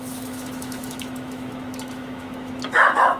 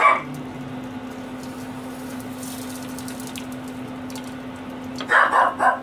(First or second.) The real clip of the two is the second